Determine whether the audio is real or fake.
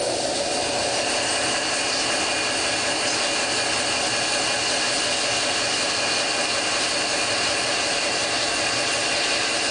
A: real